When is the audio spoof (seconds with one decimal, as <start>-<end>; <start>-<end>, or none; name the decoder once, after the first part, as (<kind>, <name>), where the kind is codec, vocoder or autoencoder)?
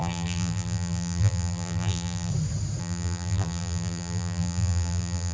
0.0-2.3 (vocoder, BigVGAN v2); 2.8-5.3